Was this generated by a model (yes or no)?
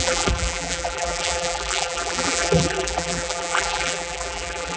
yes